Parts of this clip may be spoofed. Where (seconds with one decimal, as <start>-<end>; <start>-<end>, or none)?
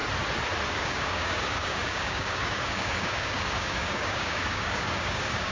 0.7-5.5